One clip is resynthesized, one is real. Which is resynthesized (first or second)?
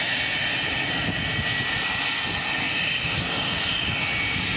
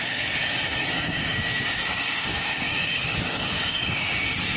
second